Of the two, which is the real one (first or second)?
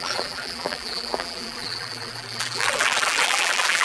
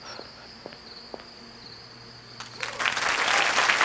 second